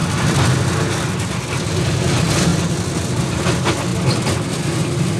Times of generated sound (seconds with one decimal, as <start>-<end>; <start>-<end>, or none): none